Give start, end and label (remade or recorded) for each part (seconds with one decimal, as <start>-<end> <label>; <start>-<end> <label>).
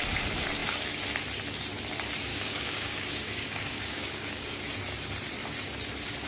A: 0.0-2.3 recorded; 2.3-4.6 remade; 4.6-6.3 recorded